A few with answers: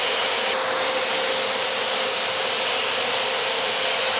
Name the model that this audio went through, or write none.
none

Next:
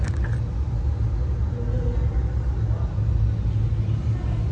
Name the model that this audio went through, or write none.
none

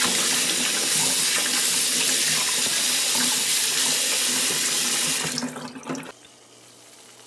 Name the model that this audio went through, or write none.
none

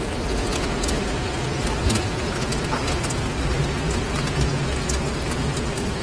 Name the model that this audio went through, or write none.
none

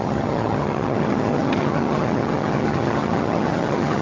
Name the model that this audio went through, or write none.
vocoder, HiFi-GAN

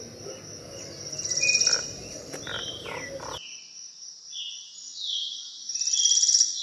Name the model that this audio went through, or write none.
none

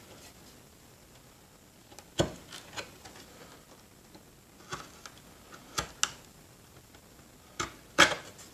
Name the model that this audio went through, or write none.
none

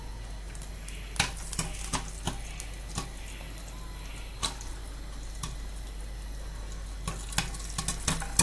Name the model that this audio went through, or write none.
none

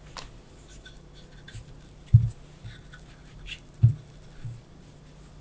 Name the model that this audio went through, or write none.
none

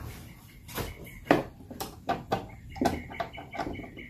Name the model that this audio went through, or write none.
vocoder, BigVGAN v2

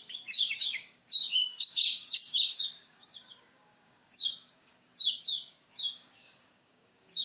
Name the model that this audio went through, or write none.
codec, DAC